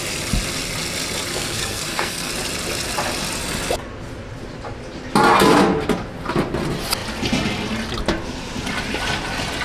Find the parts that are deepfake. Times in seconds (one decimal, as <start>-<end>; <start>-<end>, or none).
1.3-2.3